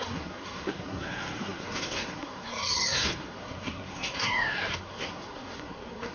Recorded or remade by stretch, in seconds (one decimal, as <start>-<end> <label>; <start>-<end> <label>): 0.0-6.1 remade